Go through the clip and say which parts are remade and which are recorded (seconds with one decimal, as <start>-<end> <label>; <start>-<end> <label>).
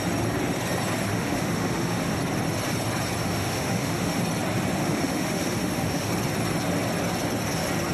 0.0-1.1 recorded; 1.1-2.2 remade; 2.2-3.2 recorded; 3.2-4.2 remade; 4.2-4.8 recorded; 4.8-6.1 remade; 6.1-7.9 recorded